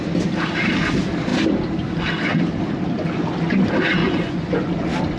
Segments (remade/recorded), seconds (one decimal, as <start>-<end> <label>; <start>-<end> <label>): 0.0-4.0 recorded; 4.0-4.8 remade; 4.8-5.2 recorded